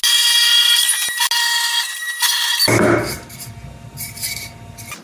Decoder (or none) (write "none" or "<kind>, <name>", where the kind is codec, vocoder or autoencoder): none